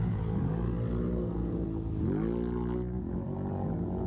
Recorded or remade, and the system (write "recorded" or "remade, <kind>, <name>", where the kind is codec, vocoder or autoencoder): recorded